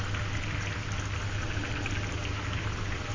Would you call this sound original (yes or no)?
yes